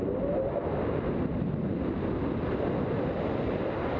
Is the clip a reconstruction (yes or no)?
no